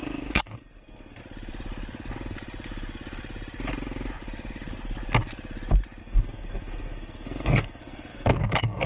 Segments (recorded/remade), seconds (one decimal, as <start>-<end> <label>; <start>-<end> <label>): 0.0-1.2 remade; 1.2-6.0 recorded; 6.0-8.9 remade